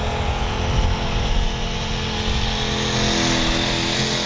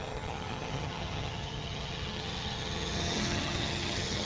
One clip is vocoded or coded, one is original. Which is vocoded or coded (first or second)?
second